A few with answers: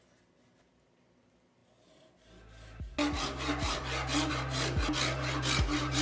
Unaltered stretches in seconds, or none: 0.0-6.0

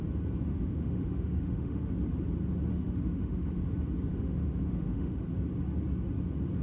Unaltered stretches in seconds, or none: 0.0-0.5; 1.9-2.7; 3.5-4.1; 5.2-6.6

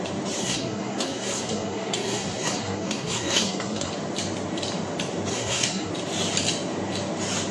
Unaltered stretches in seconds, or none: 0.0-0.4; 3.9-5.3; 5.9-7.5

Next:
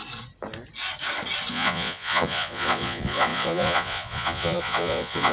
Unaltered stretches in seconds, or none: 0.0-1.5